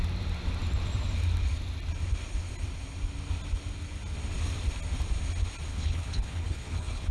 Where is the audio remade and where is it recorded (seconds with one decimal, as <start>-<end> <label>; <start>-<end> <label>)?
0.0-5.7 recorded; 5.7-7.1 remade